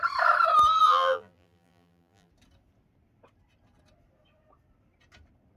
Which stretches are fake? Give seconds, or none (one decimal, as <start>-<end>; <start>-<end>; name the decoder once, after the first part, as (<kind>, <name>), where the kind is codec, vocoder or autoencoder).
0.8-2.3 (vocoder, BigVGAN v2)